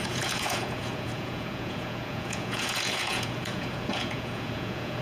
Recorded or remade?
remade